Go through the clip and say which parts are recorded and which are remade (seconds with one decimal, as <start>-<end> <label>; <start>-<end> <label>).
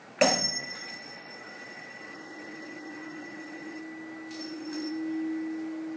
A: 0.0-0.6 recorded; 0.6-3.8 remade; 3.8-4.4 recorded; 4.4-4.9 remade; 4.9-6.0 recorded